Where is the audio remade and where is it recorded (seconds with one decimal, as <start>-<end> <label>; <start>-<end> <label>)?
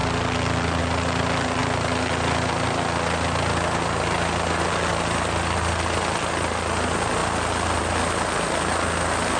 0.0-9.4 recorded